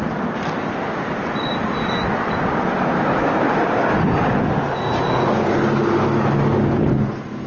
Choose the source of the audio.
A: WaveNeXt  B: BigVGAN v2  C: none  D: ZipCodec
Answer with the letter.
C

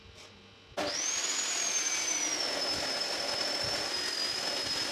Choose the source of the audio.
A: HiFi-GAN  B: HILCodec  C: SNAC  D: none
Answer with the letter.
D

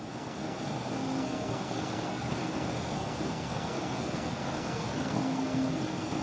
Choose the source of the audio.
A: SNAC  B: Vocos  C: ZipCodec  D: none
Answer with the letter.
A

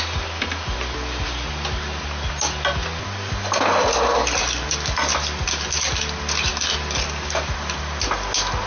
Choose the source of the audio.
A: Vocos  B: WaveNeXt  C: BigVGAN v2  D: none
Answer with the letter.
D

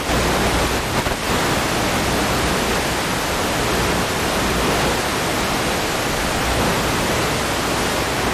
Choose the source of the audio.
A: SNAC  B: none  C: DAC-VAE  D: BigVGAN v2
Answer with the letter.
B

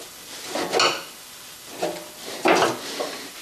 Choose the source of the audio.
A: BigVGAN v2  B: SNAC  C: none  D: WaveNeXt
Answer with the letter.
C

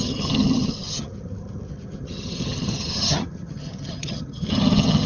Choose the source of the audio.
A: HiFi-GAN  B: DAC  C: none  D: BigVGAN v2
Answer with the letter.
A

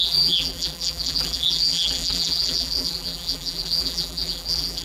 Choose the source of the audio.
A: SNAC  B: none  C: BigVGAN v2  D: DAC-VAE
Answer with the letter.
C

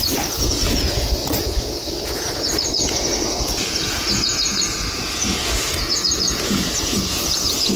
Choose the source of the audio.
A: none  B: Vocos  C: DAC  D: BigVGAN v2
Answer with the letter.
B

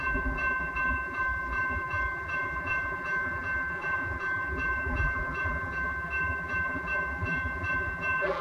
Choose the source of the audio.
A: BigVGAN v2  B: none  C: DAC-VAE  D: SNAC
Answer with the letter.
A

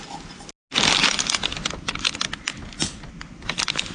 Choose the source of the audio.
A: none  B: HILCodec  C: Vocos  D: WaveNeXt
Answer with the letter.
A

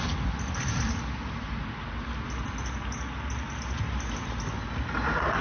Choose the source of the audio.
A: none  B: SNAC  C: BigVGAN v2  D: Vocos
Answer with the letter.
A